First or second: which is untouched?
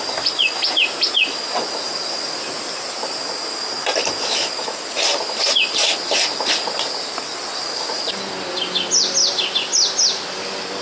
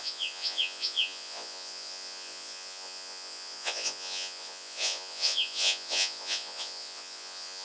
first